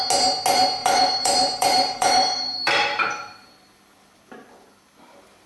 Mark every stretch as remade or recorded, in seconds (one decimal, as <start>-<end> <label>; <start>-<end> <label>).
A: 0.0-0.8 recorded; 0.8-4.1 remade; 4.1-5.5 recorded